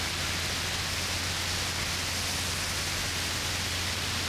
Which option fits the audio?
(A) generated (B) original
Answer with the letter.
B